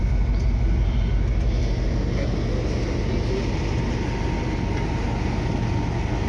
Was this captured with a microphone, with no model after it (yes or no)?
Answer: yes